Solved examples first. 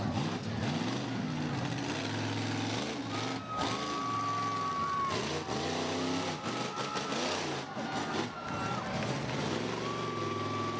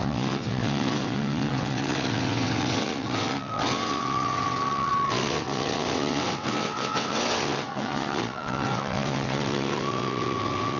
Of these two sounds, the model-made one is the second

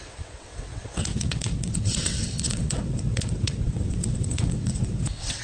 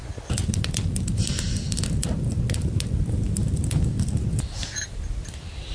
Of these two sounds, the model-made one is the first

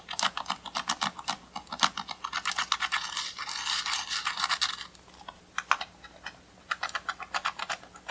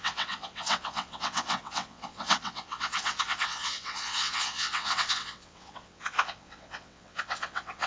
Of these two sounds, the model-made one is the second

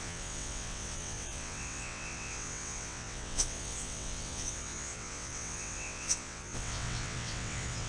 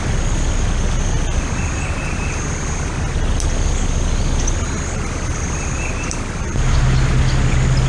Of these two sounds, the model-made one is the first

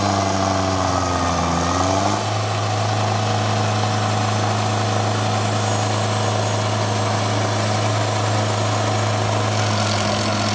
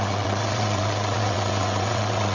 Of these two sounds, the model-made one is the second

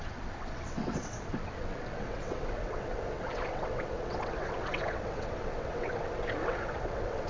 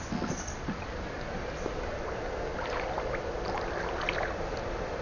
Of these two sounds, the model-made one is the first